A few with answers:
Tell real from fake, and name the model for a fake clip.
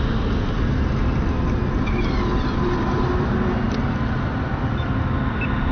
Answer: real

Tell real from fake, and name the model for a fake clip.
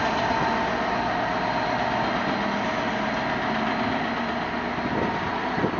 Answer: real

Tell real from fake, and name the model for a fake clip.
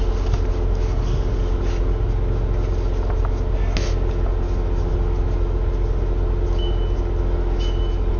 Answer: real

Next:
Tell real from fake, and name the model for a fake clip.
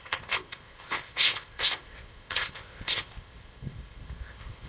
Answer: fake, codec, ZipCodec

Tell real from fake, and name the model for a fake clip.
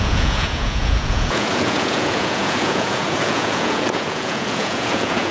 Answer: fake, vocoder, Vocos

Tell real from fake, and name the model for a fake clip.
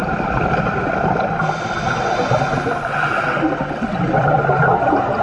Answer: real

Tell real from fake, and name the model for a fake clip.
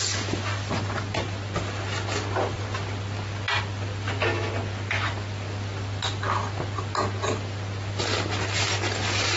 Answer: real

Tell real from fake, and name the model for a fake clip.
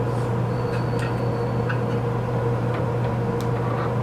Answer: real